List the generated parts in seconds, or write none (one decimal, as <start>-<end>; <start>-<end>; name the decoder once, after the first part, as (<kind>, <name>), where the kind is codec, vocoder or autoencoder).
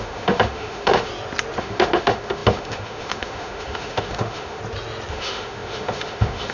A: 0.0-1.1 (autoencoder, DAC-VAE); 1.6-4.6; 5.1-6.5